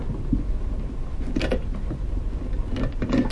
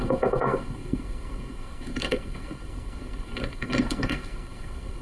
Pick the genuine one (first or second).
first